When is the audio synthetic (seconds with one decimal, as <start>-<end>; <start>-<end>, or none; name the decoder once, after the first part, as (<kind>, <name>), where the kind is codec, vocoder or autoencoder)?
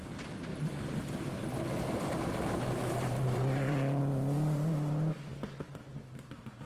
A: 0.5-4.0 (vocoder, BigVGAN v2)